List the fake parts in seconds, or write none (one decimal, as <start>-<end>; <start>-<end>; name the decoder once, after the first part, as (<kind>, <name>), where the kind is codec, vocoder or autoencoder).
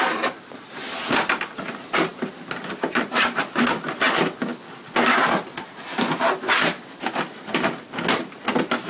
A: none